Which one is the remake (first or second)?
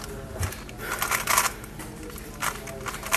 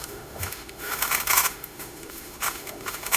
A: second